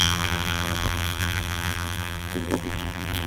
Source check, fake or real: fake